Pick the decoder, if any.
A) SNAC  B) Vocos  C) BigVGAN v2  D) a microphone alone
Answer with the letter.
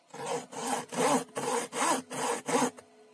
D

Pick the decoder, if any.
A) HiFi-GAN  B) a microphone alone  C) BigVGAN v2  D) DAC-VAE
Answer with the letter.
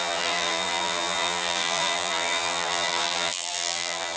C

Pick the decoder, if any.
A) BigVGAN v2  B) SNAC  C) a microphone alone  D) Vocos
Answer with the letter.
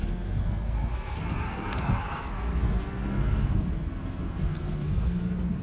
B